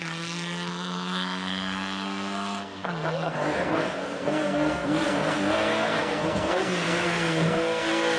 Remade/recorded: remade